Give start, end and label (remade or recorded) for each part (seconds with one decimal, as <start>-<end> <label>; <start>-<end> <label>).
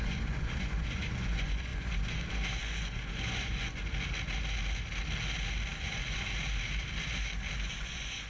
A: 0.0-3.8 remade; 3.8-5.8 recorded; 5.8-6.3 remade; 6.3-7.7 recorded; 7.7-8.3 remade